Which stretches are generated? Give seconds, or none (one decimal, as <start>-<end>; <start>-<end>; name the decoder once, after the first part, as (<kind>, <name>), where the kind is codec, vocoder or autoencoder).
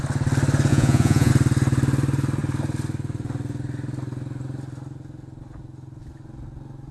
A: 0.7-1.3 (vocoder, Vocos)